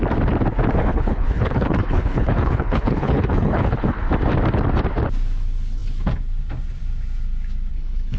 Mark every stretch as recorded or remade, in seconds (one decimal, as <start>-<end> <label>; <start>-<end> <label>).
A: 0.0-0.8 recorded; 0.8-4.0 remade; 4.0-7.7 recorded; 7.7-8.2 remade